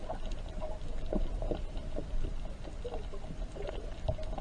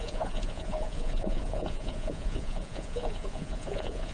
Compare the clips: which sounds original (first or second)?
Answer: first